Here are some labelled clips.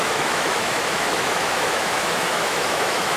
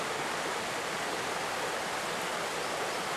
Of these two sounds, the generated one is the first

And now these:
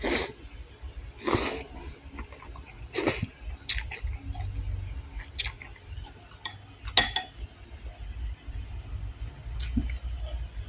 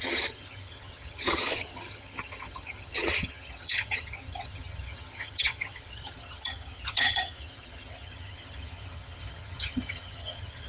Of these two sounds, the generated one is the second